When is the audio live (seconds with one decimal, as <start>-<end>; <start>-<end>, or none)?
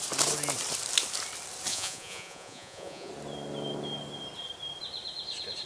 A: 0.0-1.7; 3.1-5.7